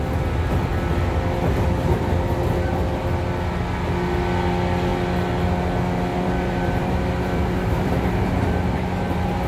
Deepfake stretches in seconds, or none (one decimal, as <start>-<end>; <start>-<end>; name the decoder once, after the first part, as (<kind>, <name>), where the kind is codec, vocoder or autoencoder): 6.1-8.4 (vocoder, BigVGAN v2)